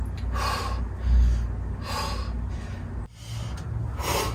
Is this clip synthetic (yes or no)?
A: no